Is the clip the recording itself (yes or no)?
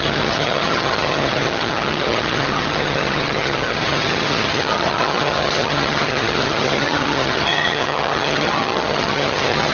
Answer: no